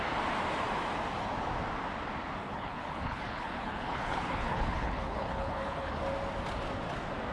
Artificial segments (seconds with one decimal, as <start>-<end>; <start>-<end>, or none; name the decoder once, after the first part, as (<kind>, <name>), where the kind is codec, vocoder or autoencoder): 2.4-6.0 (codec, HILCodec)

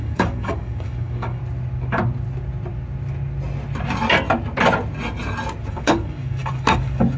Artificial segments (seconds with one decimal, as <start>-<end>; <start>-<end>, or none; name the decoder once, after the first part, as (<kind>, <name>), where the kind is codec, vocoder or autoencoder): 0.0-1.4 (codec, DAC); 5.7-7.2

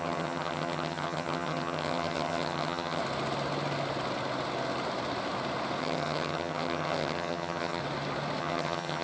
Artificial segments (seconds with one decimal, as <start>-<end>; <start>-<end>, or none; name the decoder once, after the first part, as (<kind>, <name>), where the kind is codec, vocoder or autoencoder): 0.0-3.0 (vocoder, HiFi-GAN); 5.8-7.8; 8.4-9.0

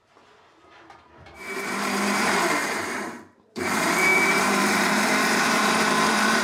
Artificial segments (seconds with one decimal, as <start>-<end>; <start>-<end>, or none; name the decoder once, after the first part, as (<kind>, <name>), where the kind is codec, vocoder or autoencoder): 0.0-6.4 (vocoder, BigVGAN v2)

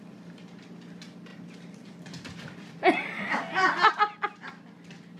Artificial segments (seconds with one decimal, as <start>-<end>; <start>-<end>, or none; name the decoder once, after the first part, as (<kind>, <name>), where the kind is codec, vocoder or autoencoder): none